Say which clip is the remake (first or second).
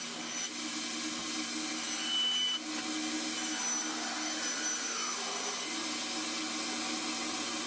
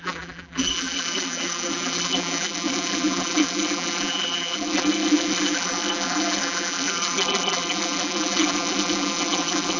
second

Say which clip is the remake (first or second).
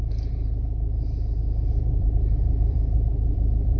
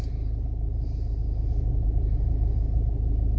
first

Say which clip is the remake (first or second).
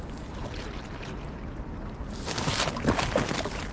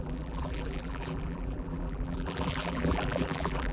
second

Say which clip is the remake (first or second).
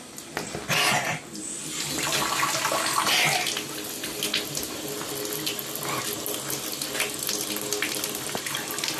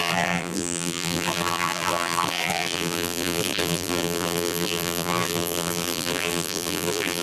second